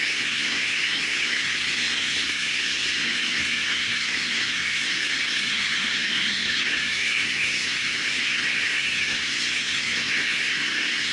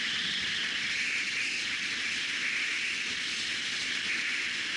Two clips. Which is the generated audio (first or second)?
first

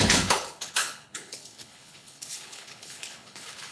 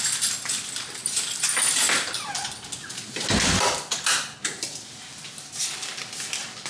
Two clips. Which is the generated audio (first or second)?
first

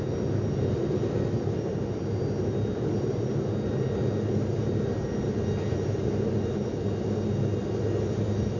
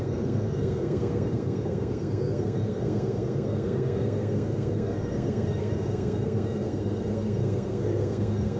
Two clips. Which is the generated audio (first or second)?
second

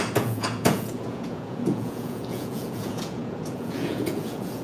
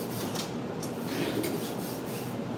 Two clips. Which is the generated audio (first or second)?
first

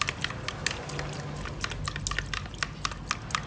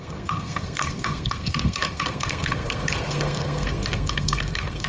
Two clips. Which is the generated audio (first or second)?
second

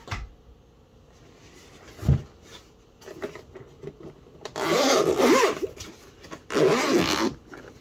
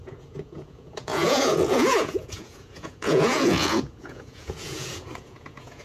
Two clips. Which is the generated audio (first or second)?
second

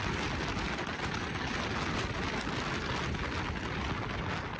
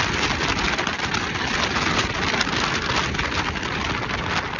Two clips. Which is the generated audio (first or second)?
second